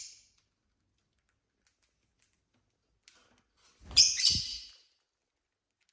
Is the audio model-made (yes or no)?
no